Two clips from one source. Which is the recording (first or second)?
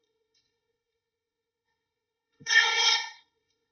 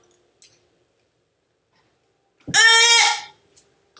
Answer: second